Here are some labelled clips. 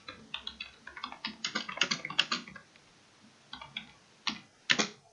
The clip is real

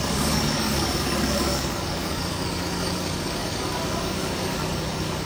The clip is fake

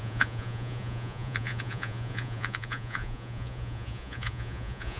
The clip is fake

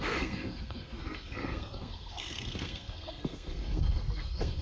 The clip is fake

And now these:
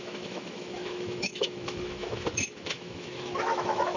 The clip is fake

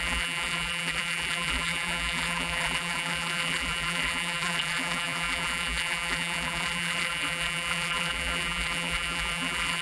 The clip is fake